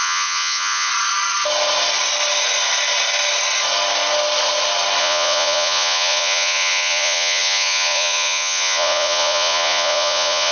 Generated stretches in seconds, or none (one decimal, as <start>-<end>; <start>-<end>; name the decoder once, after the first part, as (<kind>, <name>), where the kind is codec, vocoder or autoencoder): 0.0-0.9 (vocoder, Vocos); 5.0-10.5